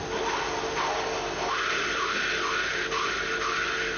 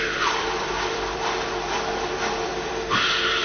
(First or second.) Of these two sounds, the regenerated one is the second